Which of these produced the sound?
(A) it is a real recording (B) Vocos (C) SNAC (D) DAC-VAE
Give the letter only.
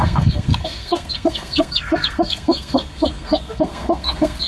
C